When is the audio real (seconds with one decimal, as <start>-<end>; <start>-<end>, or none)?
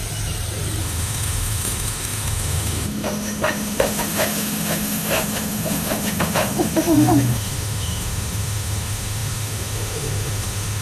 0.0-0.8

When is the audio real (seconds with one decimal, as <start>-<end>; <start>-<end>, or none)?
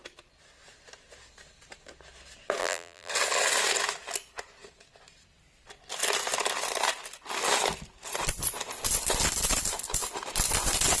0.0-2.6; 3.1-11.0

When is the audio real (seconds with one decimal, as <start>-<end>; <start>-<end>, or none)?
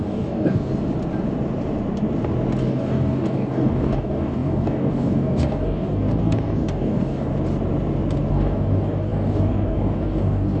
0.7-2.6; 7.3-8.3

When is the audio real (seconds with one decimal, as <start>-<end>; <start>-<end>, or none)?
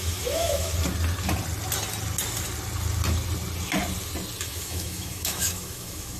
0.7-4.4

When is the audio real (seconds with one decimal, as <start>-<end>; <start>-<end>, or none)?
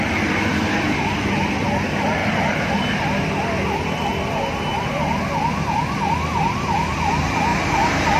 0.0-2.2; 2.7-7.5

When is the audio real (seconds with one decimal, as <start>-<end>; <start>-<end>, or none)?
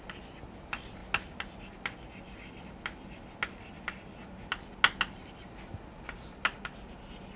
0.0-7.4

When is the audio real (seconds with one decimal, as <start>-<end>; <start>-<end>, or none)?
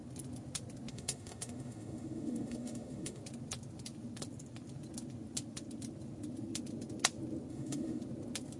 0.0-0.9; 3.2-7.5; 8.0-8.6